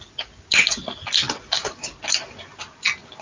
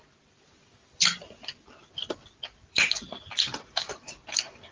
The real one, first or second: first